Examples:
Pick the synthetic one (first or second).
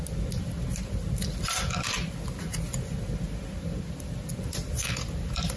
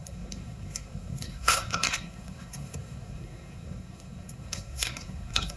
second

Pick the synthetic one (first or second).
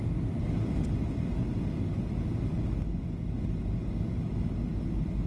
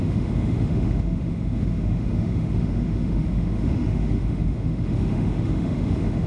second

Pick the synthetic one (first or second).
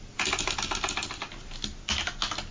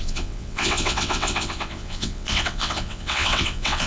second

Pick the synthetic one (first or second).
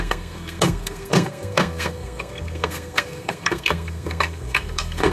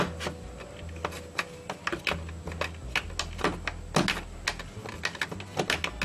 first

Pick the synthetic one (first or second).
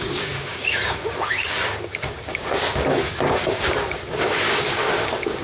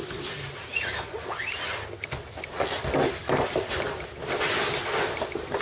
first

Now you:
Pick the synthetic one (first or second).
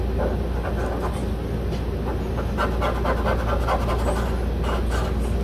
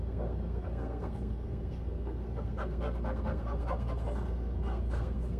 second